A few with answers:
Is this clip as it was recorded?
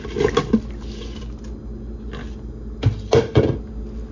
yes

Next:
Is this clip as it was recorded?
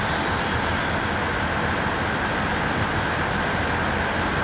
yes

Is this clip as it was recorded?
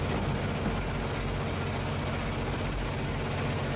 yes